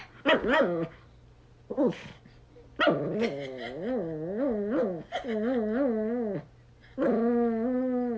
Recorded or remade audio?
recorded